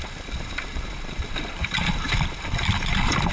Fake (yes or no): yes